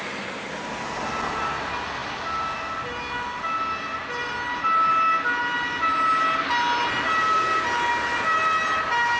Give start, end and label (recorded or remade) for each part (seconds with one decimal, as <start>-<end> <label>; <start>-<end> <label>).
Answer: 0.0-9.2 recorded